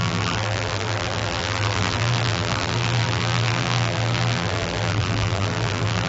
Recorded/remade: remade